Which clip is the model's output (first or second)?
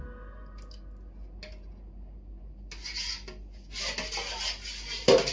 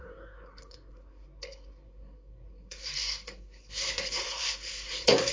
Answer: second